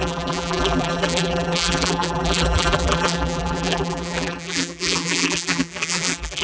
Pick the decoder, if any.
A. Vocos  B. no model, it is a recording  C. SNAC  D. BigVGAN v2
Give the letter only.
D